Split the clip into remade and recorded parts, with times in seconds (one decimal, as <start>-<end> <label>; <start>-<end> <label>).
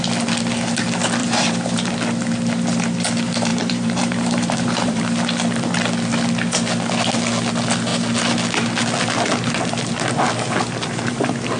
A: 0.0-1.2 recorded; 1.2-1.9 remade; 1.9-3.5 recorded; 3.5-5.0 remade; 5.0-11.6 recorded